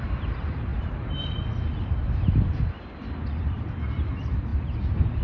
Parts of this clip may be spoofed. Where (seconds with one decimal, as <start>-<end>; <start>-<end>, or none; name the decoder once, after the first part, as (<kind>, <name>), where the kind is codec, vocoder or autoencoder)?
none